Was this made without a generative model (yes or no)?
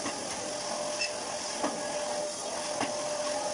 yes